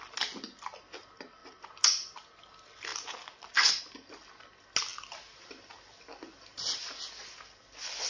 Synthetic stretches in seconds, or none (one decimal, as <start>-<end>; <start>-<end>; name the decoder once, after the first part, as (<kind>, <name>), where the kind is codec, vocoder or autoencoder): none